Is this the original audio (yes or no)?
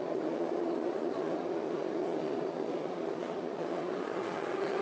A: no